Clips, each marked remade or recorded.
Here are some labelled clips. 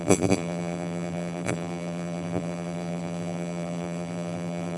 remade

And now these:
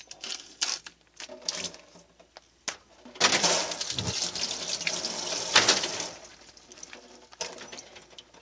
recorded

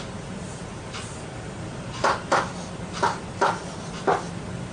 remade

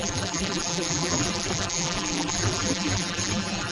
remade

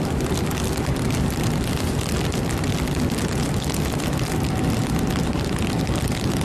recorded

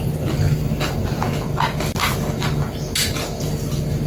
recorded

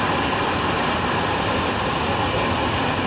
recorded